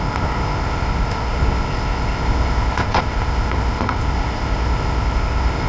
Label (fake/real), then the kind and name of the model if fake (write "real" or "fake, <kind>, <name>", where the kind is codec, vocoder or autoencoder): fake, codec, ZipCodec